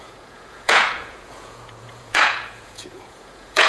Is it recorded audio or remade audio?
remade